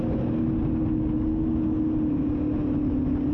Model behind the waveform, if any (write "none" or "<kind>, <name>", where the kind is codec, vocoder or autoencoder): none